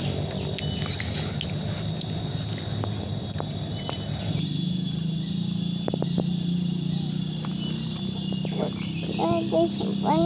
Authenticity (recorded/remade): recorded